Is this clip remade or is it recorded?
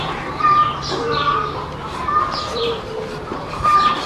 remade